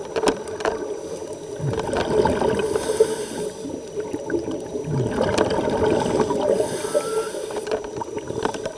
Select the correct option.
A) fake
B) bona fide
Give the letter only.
B